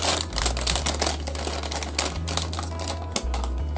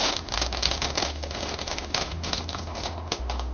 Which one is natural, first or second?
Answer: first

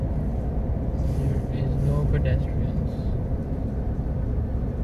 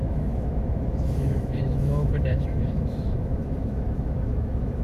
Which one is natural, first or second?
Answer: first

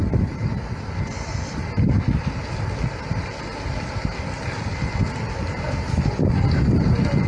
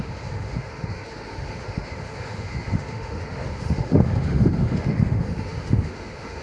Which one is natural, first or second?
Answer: first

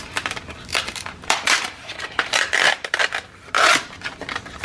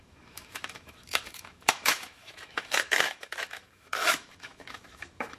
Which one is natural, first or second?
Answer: first